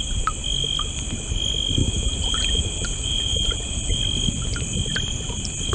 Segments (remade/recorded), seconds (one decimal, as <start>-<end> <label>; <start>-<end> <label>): 0.0-1.8 recorded; 1.8-4.0 remade; 4.0-5.7 recorded